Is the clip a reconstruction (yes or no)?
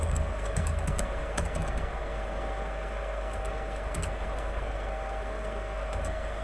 yes